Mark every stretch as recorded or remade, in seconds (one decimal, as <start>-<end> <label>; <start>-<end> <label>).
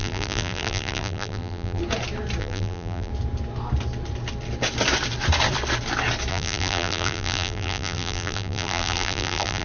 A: 0.0-1.8 remade; 1.8-2.4 recorded; 2.4-3.1 remade; 3.1-6.3 recorded; 6.3-9.6 remade